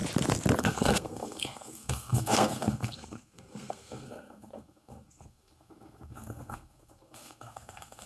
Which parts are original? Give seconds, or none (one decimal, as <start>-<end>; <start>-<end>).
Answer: 0.0-0.6